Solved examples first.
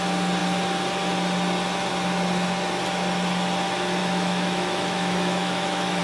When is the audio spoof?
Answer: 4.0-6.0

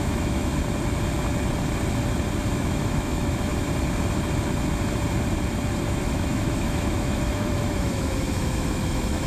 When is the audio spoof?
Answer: 0.0-0.5; 2.5-3.5; 5.9-9.3

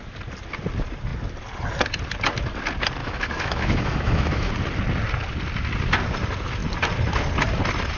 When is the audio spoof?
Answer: 3.0-4.5

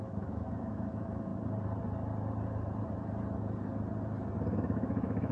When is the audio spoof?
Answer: 0.0-1.3; 4.5-5.3